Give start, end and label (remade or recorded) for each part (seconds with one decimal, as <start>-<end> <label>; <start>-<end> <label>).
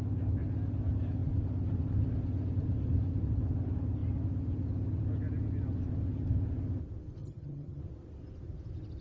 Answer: 0.0-7.2 recorded; 7.2-7.8 remade; 7.8-9.0 recorded